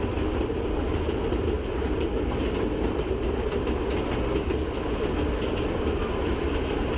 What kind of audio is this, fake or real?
real